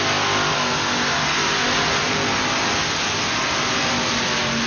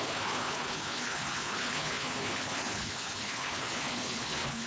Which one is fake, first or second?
second